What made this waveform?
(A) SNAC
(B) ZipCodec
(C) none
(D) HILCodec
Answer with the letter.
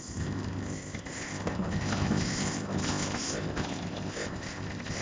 B